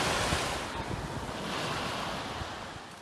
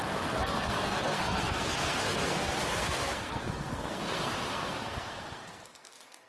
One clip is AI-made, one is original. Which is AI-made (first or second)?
second